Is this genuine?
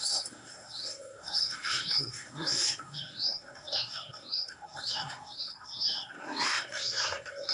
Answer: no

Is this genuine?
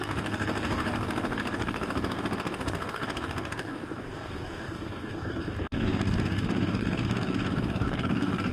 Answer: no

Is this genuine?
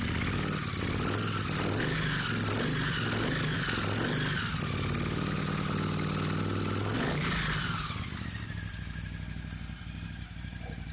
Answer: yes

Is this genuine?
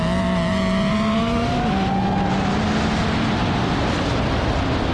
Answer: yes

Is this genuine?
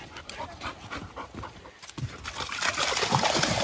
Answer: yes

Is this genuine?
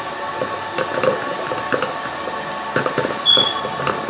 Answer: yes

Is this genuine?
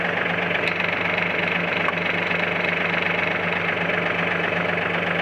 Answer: yes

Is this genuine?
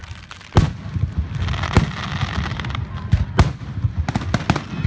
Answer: yes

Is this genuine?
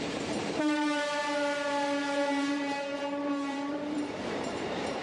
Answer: no